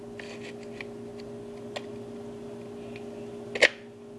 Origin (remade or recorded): recorded